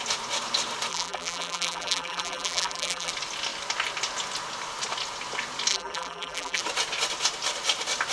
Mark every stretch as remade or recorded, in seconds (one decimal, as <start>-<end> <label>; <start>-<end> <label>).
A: 0.0-0.9 recorded; 0.9-3.1 remade; 3.1-5.7 recorded; 5.7-6.6 remade; 6.6-8.1 recorded